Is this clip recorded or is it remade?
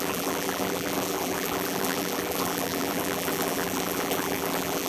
remade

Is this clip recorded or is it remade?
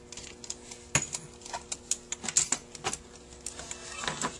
recorded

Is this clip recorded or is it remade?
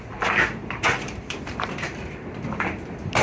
remade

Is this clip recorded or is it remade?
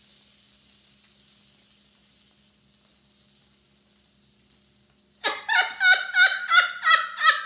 recorded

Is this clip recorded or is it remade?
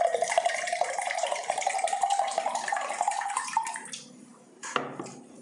remade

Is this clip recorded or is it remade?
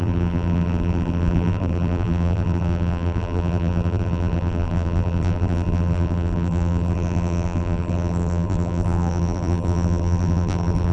remade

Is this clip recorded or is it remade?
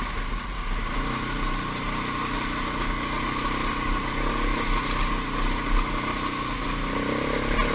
recorded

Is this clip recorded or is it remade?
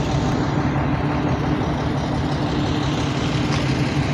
recorded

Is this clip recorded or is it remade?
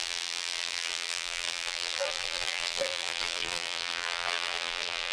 remade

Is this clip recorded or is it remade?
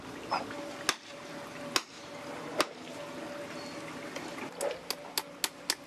recorded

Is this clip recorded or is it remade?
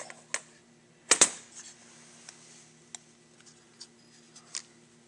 recorded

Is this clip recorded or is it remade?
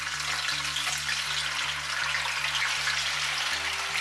recorded